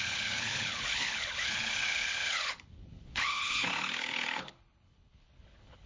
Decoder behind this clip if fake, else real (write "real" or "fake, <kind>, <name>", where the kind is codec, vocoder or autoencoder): fake, codec, HILCodec